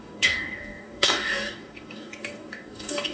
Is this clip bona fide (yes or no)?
no